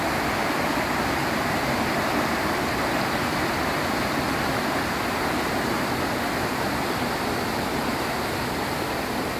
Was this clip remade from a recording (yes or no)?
no